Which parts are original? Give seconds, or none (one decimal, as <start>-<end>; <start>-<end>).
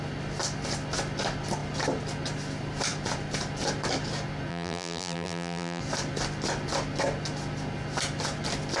0.0-4.5; 5.8-8.8